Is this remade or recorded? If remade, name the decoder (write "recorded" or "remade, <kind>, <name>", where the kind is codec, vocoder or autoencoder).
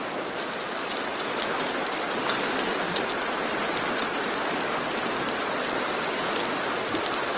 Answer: recorded